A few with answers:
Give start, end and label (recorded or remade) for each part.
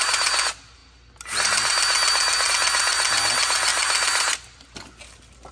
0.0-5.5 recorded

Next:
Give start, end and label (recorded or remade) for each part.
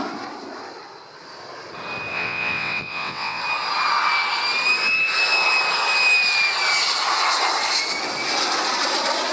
0.0-2.1 recorded; 2.1-3.4 remade; 3.4-9.3 recorded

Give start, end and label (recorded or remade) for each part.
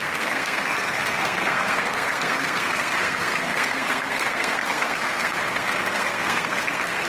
0.0-7.1 remade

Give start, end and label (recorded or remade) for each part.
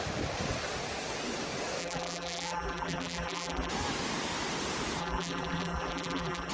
0.0-1.8 recorded; 1.8-3.7 remade; 3.7-5.0 recorded; 5.0-6.5 remade